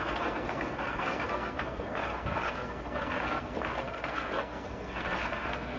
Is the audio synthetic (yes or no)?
yes